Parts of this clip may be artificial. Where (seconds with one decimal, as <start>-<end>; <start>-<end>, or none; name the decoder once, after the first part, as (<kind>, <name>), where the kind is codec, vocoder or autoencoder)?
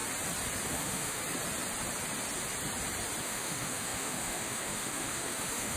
0.7-1.2 (autoencoder, DAC-VAE); 3.2-5.8